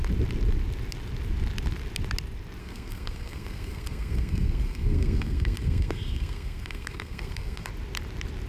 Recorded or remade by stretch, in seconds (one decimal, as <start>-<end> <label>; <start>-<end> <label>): 0.0-2.6 recorded; 2.6-7.7 remade; 7.7-8.5 recorded